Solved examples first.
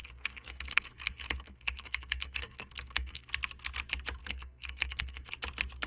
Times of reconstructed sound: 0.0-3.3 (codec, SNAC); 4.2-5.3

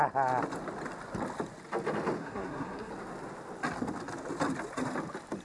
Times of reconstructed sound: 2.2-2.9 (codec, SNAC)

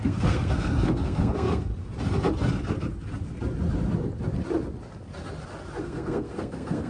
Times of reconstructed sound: 0.0-1.7 (codec, SNAC); 5.8-6.9

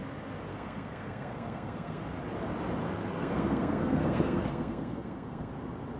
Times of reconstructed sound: 0.5-2.0 (codec, SNAC); 2.8-5.5